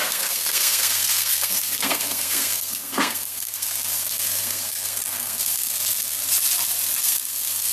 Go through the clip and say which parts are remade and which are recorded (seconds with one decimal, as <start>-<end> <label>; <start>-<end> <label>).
0.0-6.2 remade; 6.2-7.0 recorded; 7.0-7.7 remade